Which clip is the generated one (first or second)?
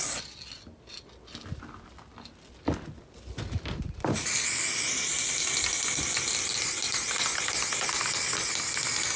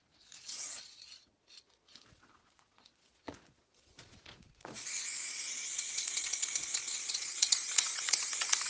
second